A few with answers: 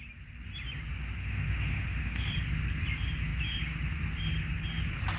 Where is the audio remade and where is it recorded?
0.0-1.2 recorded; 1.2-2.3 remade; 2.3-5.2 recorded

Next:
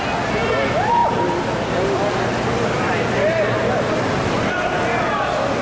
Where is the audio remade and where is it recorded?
0.0-5.6 recorded